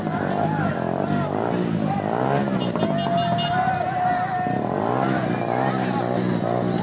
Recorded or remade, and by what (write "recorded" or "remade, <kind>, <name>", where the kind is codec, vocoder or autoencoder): recorded